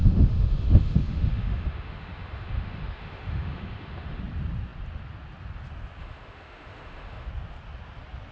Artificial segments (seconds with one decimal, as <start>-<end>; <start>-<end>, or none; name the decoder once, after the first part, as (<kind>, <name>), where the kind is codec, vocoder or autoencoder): 0.0-4.2 (autoencoder, DAC-VAE); 6.0-7.3